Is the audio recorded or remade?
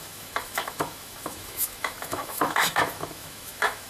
remade